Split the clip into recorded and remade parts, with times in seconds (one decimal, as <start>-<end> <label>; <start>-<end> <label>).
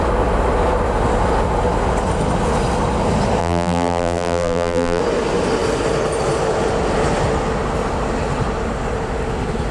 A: 0.0-3.4 recorded; 3.4-5.0 remade; 5.0-9.7 recorded